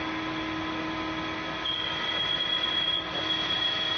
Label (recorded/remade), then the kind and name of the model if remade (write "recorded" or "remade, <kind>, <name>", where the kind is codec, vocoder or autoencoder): recorded